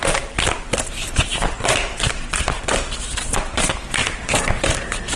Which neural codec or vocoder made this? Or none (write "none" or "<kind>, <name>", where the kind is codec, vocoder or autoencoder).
vocoder, BigVGAN v2